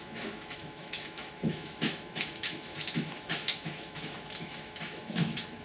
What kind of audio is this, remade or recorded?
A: remade